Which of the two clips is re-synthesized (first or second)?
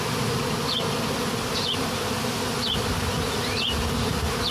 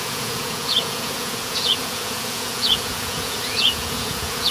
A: second